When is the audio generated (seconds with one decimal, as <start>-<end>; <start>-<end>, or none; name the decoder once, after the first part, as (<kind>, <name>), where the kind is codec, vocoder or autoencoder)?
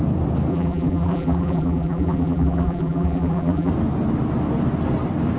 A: 0.5-3.7 (vocoder, BigVGAN v2)